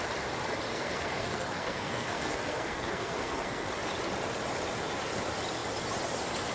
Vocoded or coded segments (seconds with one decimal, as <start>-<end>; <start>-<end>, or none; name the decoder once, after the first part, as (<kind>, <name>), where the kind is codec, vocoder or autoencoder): 0.7-3.7 (codec, SNAC)